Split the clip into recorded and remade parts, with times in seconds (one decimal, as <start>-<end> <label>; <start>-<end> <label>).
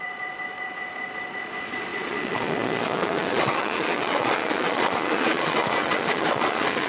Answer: 0.0-6.9 remade